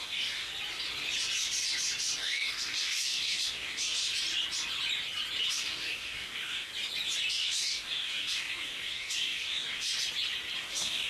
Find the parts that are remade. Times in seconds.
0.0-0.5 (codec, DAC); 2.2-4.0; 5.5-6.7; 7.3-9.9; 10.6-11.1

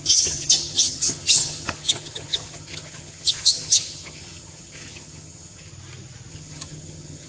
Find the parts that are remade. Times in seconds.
0.0-5.7 (vocoder, HiFi-GAN); 6.3-7.3